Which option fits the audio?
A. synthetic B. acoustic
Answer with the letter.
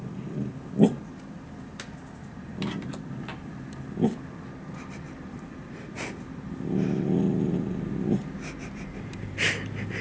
B